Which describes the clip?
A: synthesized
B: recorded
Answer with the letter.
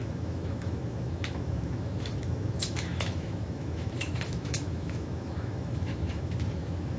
A